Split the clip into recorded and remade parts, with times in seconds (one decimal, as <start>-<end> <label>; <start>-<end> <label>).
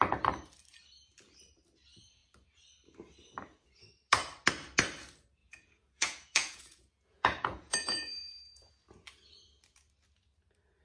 0.0-5.4 recorded; 5.4-8.7 remade; 8.7-10.8 recorded